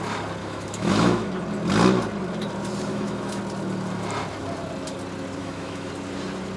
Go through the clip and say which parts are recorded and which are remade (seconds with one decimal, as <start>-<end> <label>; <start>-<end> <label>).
0.0-0.4 recorded; 0.4-1.3 remade; 1.3-2.9 recorded; 2.9-3.4 remade; 3.4-5.4 recorded; 5.4-5.9 remade; 5.9-6.6 recorded